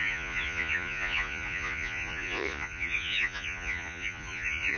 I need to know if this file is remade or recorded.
remade